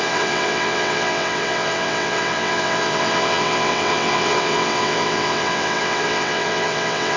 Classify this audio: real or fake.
fake